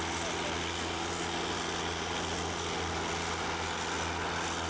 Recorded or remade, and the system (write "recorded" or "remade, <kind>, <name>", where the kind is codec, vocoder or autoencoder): recorded